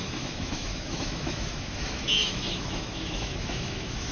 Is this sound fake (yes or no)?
yes